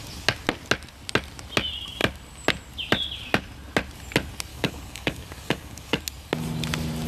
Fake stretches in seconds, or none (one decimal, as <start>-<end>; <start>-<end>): 4.5-6.0